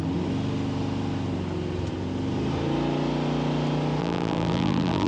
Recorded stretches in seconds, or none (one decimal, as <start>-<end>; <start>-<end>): 0.0-4.0